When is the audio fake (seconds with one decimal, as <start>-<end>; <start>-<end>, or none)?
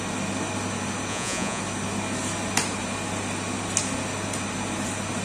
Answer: 1.1-1.6